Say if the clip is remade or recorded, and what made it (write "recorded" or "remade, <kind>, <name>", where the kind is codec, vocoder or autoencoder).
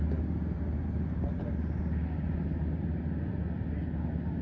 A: recorded